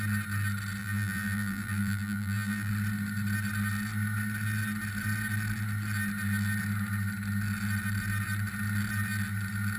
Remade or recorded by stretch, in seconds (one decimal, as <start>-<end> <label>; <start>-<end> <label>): 0.0-0.8 recorded; 0.8-2.7 remade; 2.7-9.8 recorded